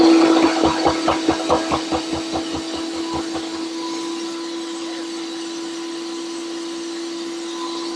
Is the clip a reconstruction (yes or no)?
no